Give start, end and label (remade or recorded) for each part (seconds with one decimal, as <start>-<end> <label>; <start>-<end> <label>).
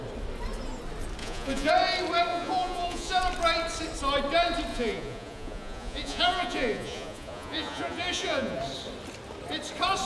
0.0-1.2 recorded; 1.2-1.7 remade; 1.7-2.3 recorded; 2.3-3.2 remade; 3.2-4.7 recorded; 4.7-8.6 remade; 8.6-10.1 recorded